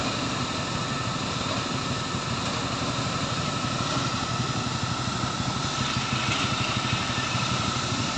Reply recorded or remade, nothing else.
recorded